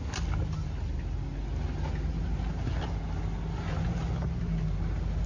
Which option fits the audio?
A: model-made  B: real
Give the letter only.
B